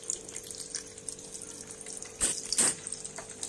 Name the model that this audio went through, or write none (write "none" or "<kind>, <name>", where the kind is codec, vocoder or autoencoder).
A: none